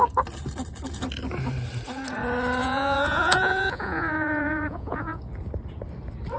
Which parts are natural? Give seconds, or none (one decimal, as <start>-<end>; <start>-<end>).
0.0-2.6; 5.2-6.4

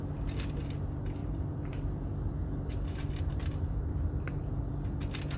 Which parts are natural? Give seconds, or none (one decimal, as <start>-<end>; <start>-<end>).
0.0-1.2; 4.4-5.4

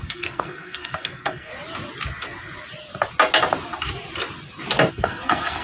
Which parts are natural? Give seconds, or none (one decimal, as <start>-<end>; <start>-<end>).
1.5-4.9

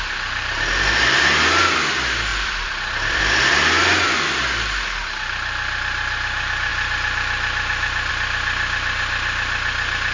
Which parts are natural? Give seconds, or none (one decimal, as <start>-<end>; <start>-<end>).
0.0-2.3; 3.2-10.1

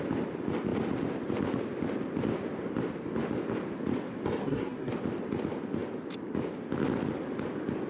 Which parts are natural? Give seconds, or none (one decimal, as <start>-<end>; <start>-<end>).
0.0-4.4; 4.9-7.9

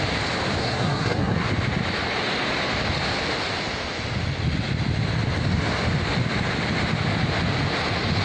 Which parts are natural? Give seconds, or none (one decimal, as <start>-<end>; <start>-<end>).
0.0-0.6; 1.5-8.2